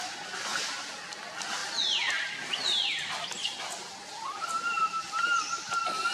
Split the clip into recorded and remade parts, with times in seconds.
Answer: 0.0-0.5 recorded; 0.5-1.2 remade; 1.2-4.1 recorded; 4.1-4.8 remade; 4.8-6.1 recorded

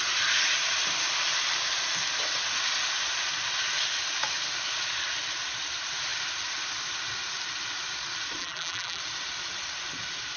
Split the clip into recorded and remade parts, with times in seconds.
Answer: 0.0-8.4 recorded; 8.4-9.0 remade; 9.0-10.4 recorded